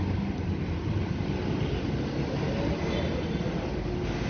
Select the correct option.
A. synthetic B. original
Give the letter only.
B